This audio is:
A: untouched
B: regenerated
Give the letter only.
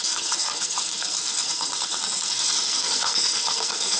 B